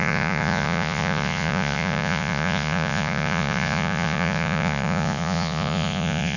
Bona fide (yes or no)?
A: no